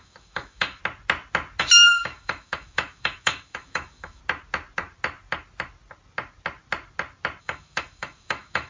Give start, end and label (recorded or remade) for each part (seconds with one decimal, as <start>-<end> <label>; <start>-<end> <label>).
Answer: 0.0-0.8 remade; 0.8-1.6 recorded; 1.6-4.2 remade; 4.2-7.4 recorded; 7.4-8.7 remade